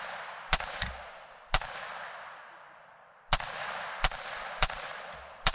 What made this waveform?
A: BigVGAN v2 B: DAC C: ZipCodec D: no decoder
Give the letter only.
A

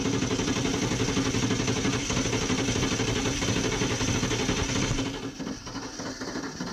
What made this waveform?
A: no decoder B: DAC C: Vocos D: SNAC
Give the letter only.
A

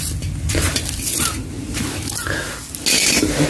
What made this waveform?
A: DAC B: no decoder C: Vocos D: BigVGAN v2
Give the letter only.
B